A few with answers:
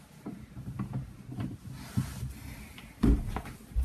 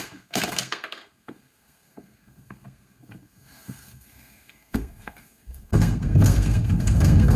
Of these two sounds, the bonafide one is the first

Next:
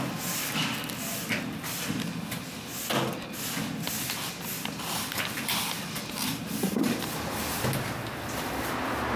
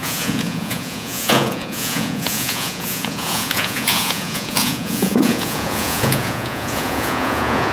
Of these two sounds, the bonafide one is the first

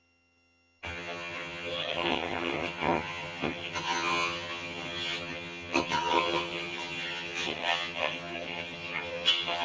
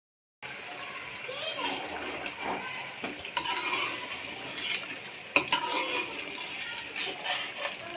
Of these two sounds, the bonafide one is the second